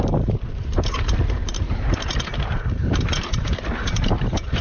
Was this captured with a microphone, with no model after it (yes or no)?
no